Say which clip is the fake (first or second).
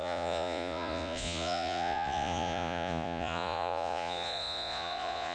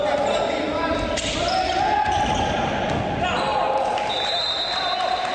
first